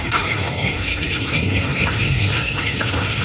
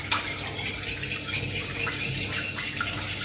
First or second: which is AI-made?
first